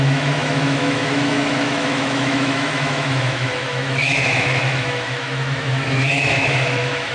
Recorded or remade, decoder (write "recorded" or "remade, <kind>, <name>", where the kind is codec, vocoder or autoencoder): remade, autoencoder, DAC-VAE